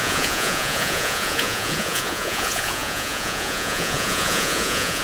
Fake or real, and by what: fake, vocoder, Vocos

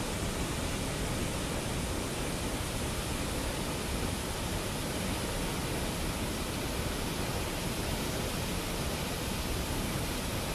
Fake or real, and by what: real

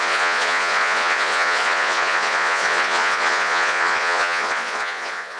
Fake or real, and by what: fake, vocoder, Vocos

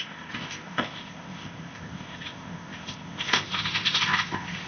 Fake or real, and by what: fake, codec, ZipCodec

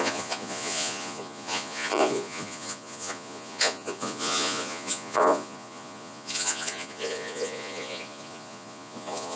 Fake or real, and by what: fake, vocoder, Vocos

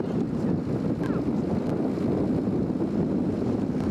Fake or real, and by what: real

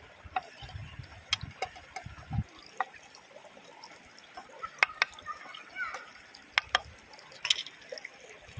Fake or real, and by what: real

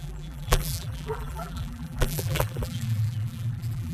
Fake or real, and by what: fake, vocoder, BigVGAN v2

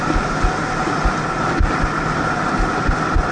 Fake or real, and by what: real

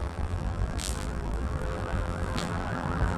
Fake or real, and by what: fake, vocoder, BigVGAN v2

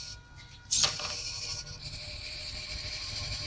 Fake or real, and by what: real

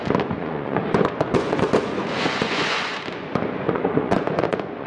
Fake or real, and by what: fake, vocoder, Vocos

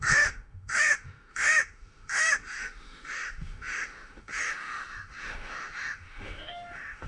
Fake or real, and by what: fake, autoencoder, DAC-VAE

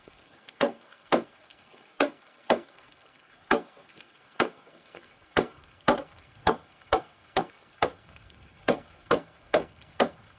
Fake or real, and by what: fake, codec, SNAC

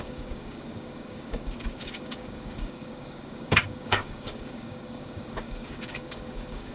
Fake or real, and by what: fake, codec, DAC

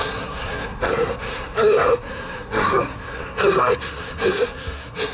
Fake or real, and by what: fake, codec, SNAC